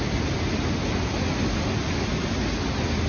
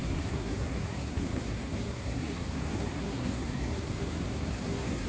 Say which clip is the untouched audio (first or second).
first